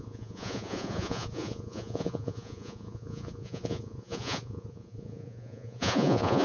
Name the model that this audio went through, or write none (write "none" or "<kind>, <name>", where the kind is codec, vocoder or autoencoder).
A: vocoder, Vocos